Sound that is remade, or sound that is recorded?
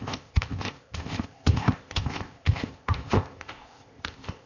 remade